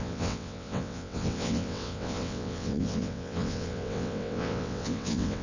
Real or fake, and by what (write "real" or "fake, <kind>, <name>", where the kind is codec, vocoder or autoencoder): fake, vocoder, WaveNeXt